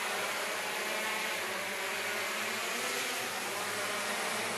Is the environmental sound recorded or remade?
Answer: recorded